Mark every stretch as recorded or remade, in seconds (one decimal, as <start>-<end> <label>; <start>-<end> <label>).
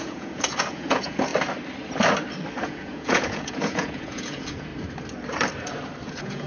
0.0-1.3 remade; 1.3-2.6 recorded; 2.6-4.7 remade; 4.7-6.1 recorded; 6.1-6.5 remade